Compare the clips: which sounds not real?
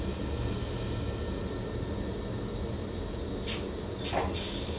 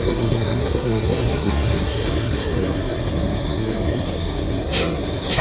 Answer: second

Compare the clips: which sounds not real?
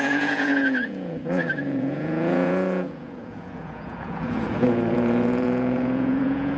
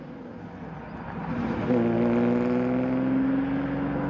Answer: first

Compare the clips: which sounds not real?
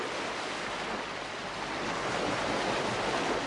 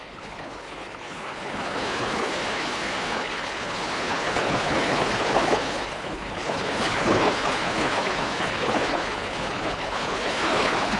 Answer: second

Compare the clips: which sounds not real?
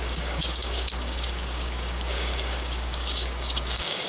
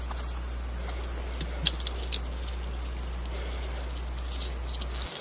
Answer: first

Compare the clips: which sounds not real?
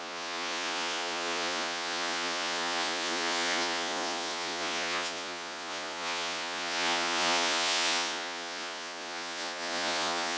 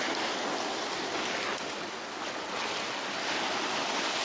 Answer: first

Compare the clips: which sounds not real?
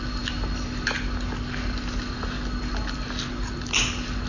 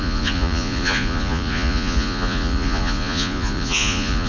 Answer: second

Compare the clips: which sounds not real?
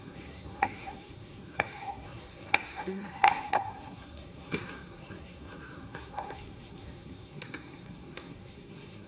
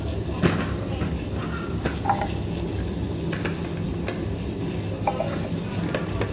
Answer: first